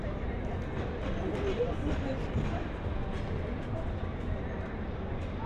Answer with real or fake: real